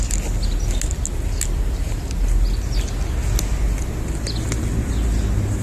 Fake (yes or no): no